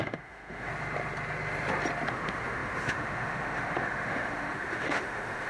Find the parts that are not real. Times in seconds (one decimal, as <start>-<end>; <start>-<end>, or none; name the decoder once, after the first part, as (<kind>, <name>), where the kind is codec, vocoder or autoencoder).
0.0-0.7 (autoencoder, DAC-VAE); 2.1-5.5